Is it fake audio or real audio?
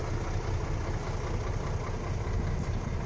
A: real